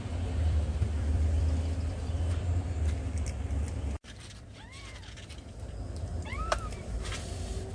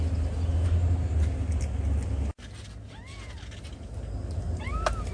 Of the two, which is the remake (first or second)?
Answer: first